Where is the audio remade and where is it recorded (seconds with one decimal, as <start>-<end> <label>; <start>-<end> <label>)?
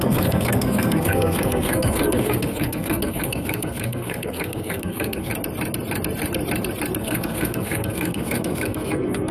0.0-5.3 remade; 5.3-7.0 recorded; 7.0-9.3 remade